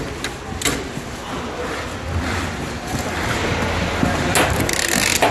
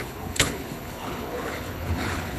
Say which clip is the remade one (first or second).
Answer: second